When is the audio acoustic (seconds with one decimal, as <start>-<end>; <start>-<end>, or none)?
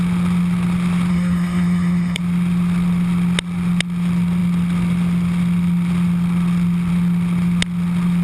0.0-1.1; 2.2-8.2